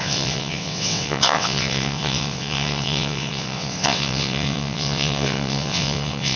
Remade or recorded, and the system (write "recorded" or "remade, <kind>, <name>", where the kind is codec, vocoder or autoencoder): remade, vocoder, WaveNeXt